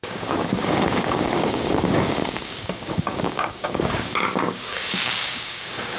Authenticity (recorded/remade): remade